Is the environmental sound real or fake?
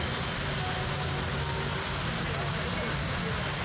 real